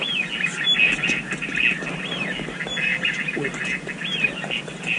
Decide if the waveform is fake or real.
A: real